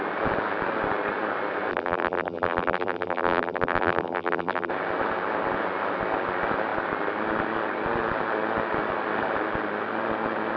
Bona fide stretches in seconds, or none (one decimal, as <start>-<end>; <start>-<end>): 0.0-1.7; 4.7-10.6